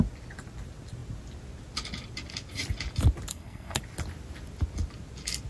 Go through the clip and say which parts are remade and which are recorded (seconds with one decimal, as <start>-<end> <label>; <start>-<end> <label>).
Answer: 0.0-3.3 recorded; 3.3-3.8 remade; 3.8-5.5 recorded